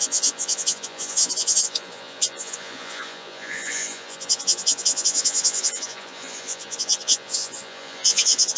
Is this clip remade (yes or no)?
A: yes